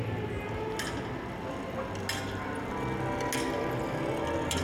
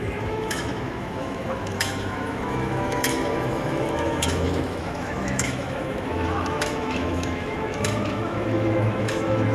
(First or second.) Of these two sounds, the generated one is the second